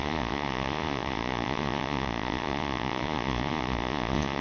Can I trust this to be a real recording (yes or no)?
no